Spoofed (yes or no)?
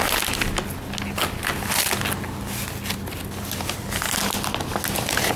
no